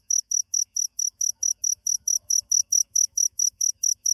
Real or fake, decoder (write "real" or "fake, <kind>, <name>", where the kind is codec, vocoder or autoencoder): fake, autoencoder, DAC-VAE